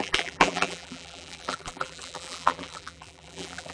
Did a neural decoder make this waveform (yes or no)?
yes